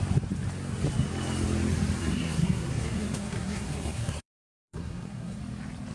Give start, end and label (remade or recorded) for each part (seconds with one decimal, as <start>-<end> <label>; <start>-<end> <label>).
0.0-2.0 recorded; 2.0-5.4 remade; 5.4-5.9 recorded